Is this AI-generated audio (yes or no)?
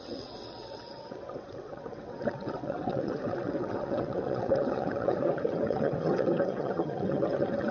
yes